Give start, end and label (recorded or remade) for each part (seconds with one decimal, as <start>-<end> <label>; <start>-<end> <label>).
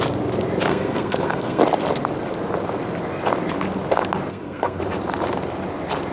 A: 0.0-0.7 recorded; 0.7-1.6 remade; 1.6-4.3 recorded; 4.3-4.8 remade; 4.8-6.1 recorded